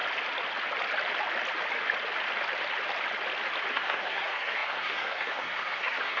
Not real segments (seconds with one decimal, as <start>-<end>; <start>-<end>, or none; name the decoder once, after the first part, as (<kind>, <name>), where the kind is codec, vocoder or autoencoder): 3.7-6.2 (codec, SNAC)